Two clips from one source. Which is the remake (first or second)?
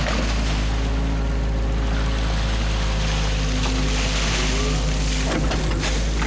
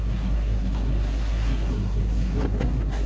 second